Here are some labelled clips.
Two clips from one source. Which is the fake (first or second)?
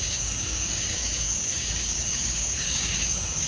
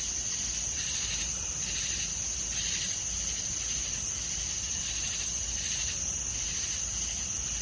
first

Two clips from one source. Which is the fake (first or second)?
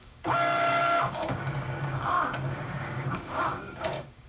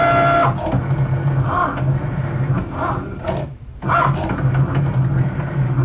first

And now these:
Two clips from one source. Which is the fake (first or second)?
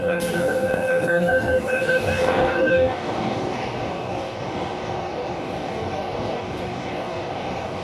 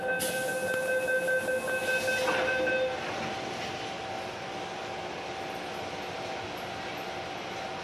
first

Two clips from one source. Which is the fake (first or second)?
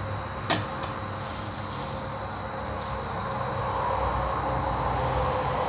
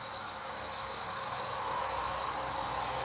second